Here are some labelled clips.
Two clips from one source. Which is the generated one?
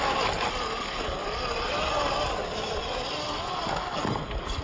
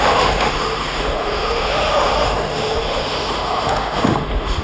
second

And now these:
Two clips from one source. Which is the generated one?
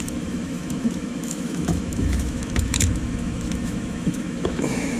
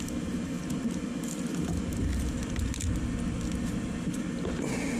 first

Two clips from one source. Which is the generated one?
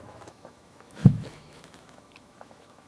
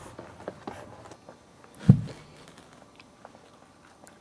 first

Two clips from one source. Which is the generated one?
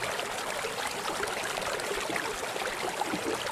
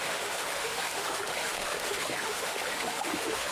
second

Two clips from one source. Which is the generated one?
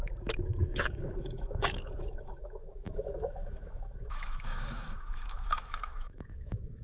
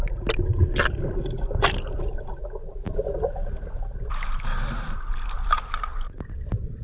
first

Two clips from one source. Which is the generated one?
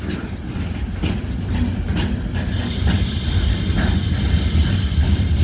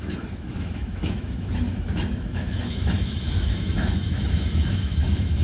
second